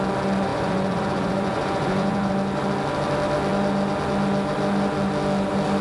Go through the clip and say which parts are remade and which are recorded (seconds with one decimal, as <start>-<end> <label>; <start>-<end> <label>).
0.0-0.5 recorded; 0.5-2.3 remade; 2.3-5.8 recorded